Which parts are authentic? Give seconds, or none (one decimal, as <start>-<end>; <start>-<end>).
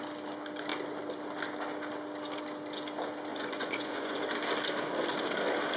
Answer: 0.0-3.3; 4.2-5.8